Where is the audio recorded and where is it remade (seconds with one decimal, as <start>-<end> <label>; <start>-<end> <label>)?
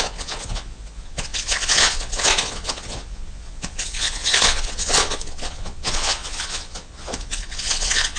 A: 0.0-8.2 remade